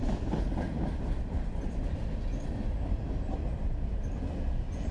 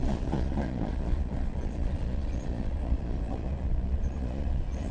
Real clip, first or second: first